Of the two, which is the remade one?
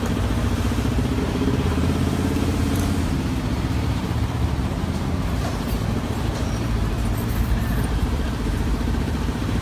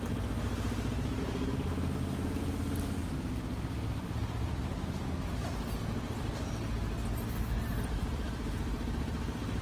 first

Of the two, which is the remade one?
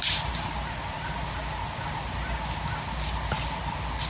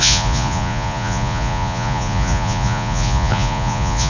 second